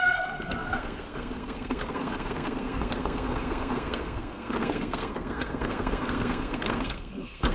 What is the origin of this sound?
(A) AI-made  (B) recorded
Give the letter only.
A